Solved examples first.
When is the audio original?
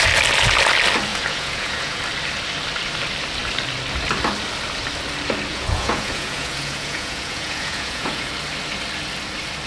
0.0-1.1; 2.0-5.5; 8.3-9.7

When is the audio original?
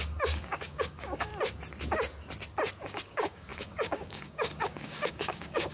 1.3-2.8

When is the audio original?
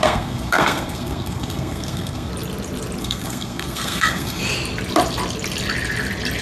2.3-3.0; 4.4-6.4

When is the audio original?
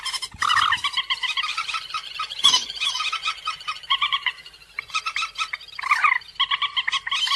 0.0-1.5; 5.0-7.4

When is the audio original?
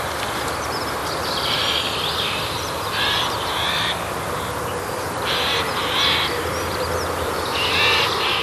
0.0-8.4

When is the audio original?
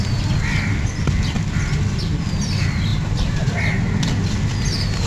0.0-2.9; 3.6-5.1